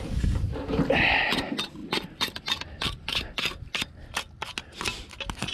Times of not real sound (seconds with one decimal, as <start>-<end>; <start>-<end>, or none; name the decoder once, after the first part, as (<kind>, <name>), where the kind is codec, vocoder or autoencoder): none